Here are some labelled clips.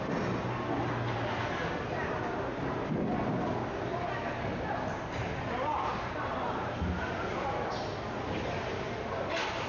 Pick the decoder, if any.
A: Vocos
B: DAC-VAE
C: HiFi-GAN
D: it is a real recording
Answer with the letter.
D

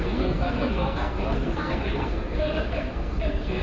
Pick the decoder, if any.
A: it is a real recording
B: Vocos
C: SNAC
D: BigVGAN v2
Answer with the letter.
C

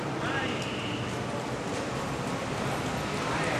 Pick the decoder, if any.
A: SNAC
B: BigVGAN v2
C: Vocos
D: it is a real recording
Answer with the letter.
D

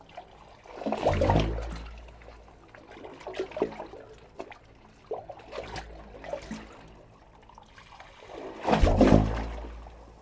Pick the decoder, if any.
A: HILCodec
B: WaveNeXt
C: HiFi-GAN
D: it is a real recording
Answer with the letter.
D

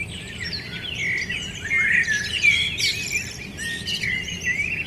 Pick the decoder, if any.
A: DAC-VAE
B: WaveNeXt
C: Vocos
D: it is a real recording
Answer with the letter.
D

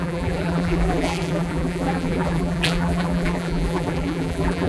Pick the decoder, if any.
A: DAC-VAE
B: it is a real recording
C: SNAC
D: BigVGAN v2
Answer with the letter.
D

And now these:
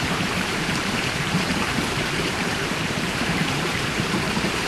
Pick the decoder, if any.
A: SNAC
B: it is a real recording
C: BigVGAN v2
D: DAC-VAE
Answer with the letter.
C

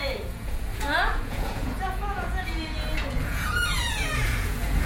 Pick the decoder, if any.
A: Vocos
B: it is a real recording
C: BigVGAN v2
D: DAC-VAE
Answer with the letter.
A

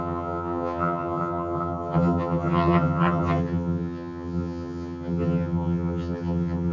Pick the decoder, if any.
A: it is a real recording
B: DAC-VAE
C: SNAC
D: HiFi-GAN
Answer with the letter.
D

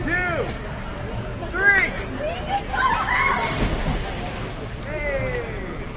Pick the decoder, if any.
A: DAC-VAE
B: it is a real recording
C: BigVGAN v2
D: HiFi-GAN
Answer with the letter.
B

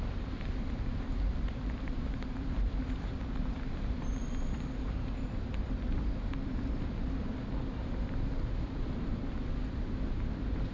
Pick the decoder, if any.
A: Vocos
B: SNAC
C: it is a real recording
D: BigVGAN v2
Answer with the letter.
D